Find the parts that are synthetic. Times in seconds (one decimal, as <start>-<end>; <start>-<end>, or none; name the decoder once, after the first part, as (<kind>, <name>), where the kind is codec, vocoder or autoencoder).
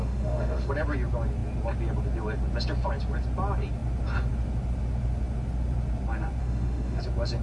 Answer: 0.0-0.7 (autoencoder, DAC-VAE); 6.4-7.0